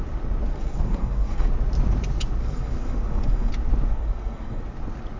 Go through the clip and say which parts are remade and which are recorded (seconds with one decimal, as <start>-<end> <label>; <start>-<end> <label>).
0.0-0.5 recorded; 0.5-1.5 remade; 1.5-2.4 recorded; 2.4-3.5 remade; 3.5-3.9 recorded; 3.9-4.6 remade; 4.6-5.2 recorded